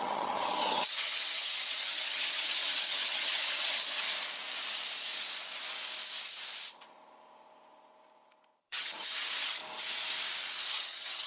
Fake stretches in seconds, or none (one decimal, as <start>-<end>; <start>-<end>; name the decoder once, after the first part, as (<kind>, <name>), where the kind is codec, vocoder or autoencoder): 0.0-4.1 (vocoder, HiFi-GAN); 8.6-9.6; 10.7-11.3

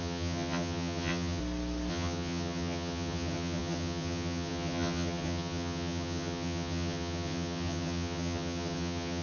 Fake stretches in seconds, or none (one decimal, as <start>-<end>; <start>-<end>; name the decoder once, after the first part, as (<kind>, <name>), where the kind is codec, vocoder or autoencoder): 0.0-1.4 (vocoder, HiFi-GAN); 1.9-9.2

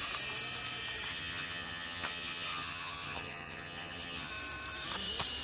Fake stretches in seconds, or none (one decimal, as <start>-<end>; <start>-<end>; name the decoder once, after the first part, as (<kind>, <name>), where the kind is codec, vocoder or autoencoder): 1.1-4.3 (vocoder, HiFi-GAN)

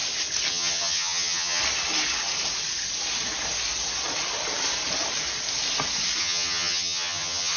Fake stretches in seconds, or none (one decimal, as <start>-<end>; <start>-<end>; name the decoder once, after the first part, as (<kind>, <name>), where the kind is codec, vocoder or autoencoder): 0.5-1.6 (vocoder, HiFi-GAN); 6.2-7.6

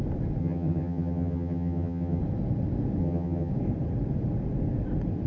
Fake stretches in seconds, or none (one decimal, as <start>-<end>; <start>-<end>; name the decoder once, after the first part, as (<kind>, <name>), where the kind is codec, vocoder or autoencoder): 0.4-2.2 (vocoder, HiFi-GAN); 3.0-3.5

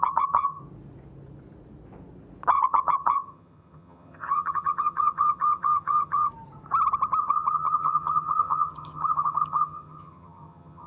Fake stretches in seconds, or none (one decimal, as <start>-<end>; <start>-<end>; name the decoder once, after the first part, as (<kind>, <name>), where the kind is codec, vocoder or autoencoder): 0.0-0.6 (vocoder, HiFi-GAN); 2.5-6.3; 7.2-10.9

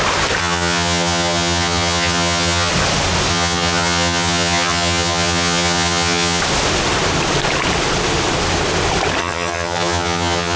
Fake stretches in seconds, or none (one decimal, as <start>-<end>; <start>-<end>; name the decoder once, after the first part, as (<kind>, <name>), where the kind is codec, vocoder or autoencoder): 0.4-2.7 (vocoder, HiFi-GAN); 3.3-6.4; 9.2-10.6

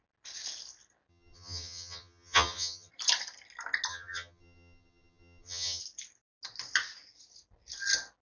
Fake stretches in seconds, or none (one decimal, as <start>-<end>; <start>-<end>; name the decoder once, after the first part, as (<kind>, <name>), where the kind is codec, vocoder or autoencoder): 1.1-2.9 (vocoder, HiFi-GAN); 3.9-5.8